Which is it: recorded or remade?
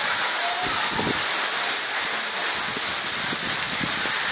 recorded